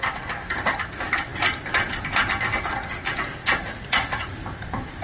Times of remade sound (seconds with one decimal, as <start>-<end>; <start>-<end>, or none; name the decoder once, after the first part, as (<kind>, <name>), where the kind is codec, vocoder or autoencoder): 3.4-4.4 (vocoder, Vocos)